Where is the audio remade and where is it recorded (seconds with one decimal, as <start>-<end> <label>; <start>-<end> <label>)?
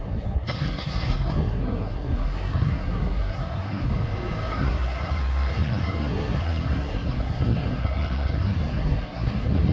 0.0-3.9 remade; 3.9-4.5 recorded; 4.5-9.7 remade